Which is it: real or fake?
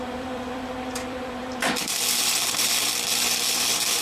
fake